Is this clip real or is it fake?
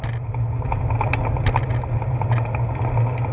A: real